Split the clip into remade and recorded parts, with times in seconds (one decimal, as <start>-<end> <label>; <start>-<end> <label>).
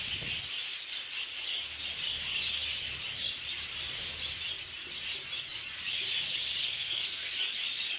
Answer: 0.0-6.6 recorded; 6.6-7.3 remade; 7.3-8.0 recorded